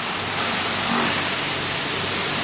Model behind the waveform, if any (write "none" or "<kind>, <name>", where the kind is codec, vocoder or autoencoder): none